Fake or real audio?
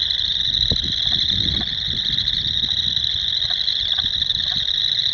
real